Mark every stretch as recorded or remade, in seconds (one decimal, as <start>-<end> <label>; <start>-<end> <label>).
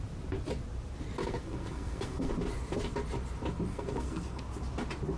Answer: 0.0-1.2 recorded; 1.2-2.3 remade; 2.3-3.7 recorded; 3.7-4.4 remade; 4.4-5.2 recorded